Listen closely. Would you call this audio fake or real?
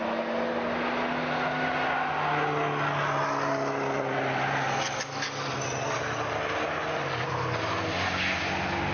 real